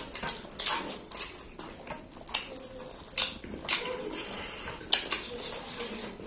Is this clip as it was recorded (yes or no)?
yes